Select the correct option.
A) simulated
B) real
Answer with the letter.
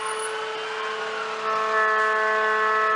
B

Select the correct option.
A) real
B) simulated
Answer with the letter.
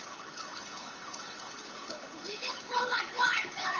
B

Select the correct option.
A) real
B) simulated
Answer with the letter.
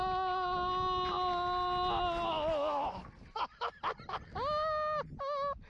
A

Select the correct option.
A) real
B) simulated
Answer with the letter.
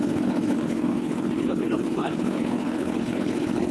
B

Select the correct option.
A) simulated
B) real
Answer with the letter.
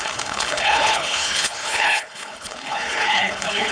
A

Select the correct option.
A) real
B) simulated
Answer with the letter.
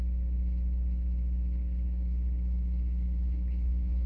B